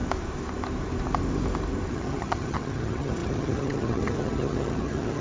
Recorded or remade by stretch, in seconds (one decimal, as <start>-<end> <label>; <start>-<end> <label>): 0.0-1.9 recorded; 1.9-5.2 remade

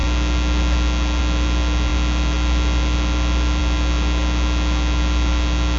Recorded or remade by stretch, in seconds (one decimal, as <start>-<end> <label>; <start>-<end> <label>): 0.0-5.8 recorded